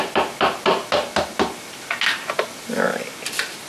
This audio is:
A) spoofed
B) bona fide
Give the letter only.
B